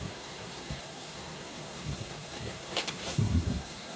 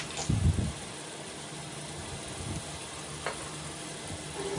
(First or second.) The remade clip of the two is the first